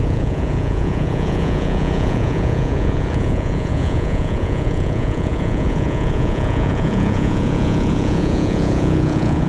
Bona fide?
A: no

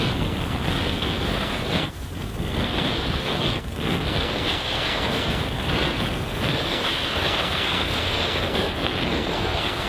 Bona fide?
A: no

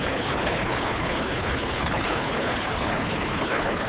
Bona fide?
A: no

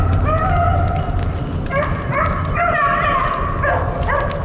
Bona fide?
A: yes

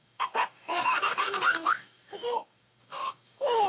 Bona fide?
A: no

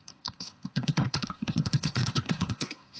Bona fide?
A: no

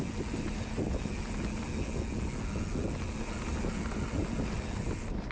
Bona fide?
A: yes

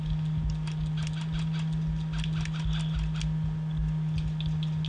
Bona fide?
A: yes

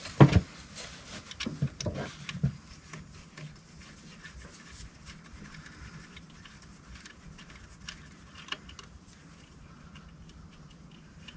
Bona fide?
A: yes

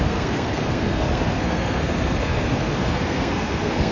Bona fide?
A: no